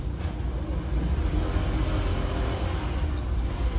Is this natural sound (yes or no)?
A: yes